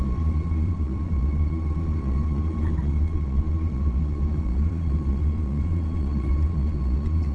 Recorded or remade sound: remade